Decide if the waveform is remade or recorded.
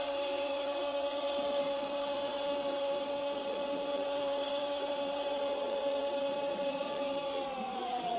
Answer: remade